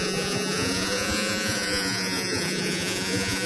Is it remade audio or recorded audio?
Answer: remade